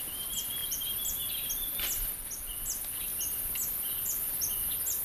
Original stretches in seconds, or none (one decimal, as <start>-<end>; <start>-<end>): 0.0-0.6; 1.8-3.1; 4.4-5.0